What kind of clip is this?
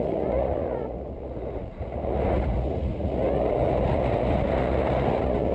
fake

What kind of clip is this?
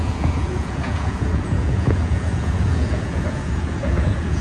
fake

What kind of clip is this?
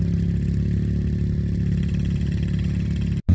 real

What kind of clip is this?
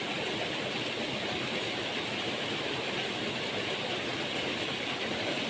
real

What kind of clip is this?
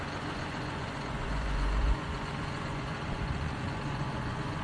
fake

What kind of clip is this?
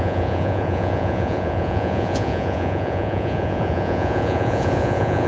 fake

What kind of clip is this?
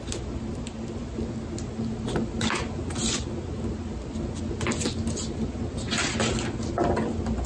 real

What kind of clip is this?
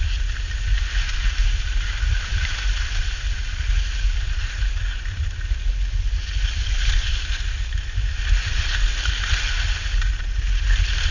real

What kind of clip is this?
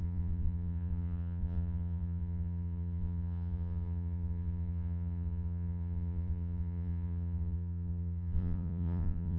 fake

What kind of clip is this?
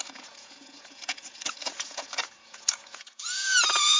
fake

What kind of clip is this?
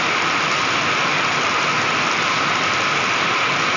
real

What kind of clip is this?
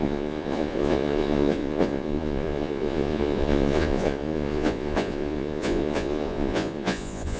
fake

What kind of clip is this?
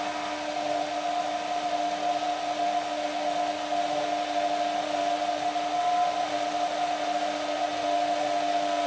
real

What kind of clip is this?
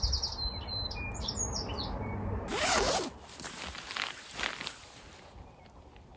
real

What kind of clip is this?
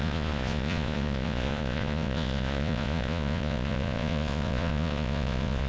fake